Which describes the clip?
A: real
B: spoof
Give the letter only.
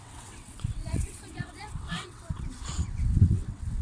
B